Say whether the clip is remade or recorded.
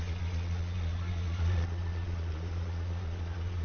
remade